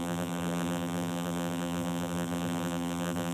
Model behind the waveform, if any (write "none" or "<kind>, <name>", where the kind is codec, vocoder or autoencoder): vocoder, BigVGAN v2